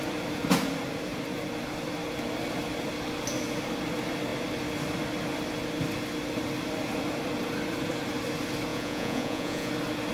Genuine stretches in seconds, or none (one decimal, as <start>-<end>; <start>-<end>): 0.0-8.7; 9.7-10.1